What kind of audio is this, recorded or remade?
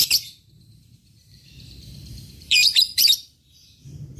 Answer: remade